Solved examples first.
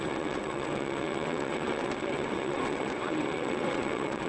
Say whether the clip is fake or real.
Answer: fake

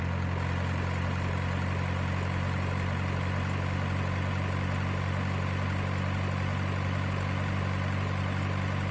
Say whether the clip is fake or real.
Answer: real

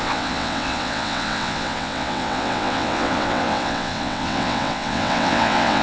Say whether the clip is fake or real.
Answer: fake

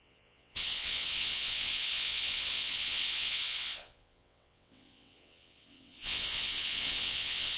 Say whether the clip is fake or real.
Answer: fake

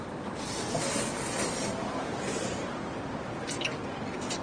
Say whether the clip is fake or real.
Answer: real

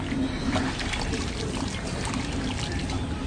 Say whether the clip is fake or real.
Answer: real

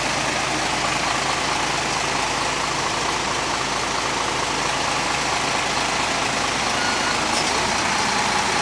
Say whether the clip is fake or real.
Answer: real